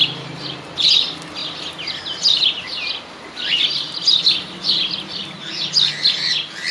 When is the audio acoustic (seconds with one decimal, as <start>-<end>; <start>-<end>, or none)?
0.0-6.7